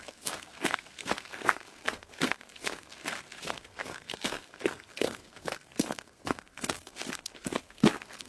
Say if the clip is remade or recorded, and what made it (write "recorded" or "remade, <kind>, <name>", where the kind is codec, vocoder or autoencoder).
remade, codec, SNAC